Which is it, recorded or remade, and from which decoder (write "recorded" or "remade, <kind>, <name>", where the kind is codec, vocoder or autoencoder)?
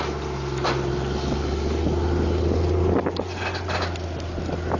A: recorded